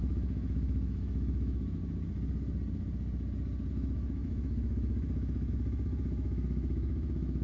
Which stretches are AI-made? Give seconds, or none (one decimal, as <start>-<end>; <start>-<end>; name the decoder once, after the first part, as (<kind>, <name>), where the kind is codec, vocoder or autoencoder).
0.0-1.8 (autoencoder, DAC-VAE); 3.7-7.4